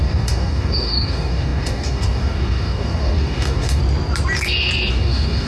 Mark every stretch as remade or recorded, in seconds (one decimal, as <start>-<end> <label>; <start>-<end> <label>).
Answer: 0.0-3.8 remade; 3.8-4.9 recorded; 4.9-5.5 remade